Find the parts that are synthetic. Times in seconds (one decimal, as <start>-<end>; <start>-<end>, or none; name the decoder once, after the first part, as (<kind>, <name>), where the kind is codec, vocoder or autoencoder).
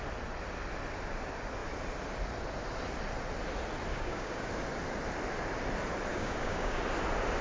3.9-4.5 (codec, DAC); 6.1-6.8